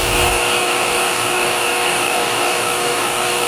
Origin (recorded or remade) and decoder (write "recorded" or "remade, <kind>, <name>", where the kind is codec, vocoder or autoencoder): remade, codec, DAC